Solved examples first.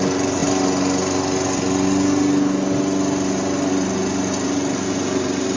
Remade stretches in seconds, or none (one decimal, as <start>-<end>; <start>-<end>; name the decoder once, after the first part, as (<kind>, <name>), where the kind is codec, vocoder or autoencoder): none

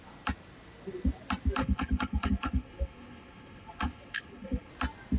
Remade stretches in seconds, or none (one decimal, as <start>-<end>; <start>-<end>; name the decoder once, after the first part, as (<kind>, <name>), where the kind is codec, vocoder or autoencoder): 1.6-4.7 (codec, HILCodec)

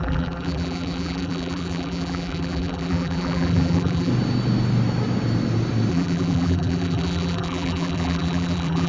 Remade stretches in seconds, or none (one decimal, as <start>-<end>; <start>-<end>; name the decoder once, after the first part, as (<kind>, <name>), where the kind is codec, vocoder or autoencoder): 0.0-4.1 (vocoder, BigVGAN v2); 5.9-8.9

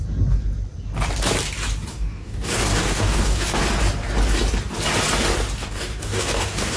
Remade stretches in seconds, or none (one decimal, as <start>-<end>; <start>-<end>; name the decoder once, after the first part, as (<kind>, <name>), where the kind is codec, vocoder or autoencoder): 1.9-3.6 (codec, DAC); 5.6-6.8

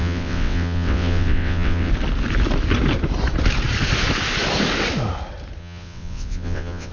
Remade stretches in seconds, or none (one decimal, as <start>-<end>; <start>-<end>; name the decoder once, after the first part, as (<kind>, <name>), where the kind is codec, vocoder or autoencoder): 0.0-1.9 (vocoder, WaveNeXt); 5.6-6.9

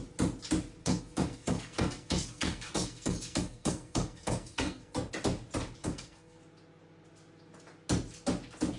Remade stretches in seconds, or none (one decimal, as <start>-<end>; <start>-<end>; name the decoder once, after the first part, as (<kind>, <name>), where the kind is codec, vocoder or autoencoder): 0.8-5.1 (codec, SNAC); 5.8-6.4

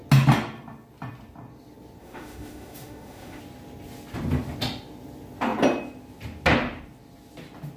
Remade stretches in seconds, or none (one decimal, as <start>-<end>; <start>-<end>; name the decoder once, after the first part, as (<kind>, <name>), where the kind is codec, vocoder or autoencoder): 2.0-3.4 (autoencoder, DAC-VAE)